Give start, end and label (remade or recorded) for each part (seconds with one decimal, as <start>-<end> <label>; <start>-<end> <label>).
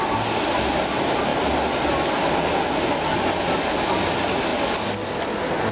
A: 0.0-5.7 recorded